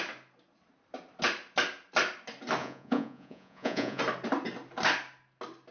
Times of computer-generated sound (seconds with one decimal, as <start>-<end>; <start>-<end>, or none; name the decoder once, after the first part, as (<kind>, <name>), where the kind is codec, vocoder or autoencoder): 2.6-4.0 (vocoder, Vocos)